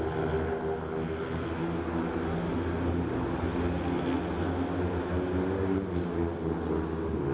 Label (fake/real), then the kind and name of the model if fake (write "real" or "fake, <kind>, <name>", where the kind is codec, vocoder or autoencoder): real